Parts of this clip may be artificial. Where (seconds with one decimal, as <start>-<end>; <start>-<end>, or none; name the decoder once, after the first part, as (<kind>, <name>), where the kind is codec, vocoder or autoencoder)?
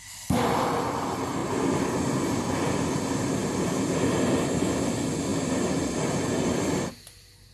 none